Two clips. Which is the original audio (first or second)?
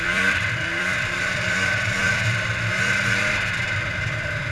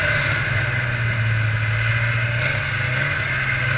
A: second